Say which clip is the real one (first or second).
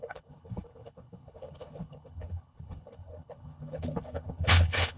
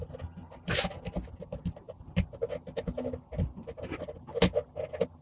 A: second